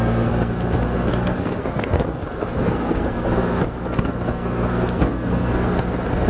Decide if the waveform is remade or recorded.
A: remade